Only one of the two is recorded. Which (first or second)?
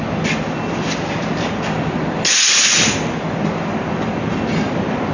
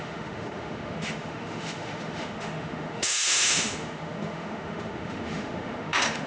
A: first